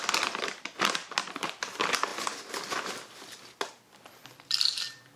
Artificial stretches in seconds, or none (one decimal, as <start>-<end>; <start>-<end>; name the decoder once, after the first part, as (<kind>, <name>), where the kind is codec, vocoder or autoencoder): none